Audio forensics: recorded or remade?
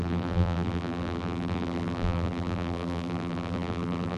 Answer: remade